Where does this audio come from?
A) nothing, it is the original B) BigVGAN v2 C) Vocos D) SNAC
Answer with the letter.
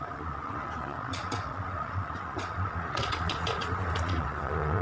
C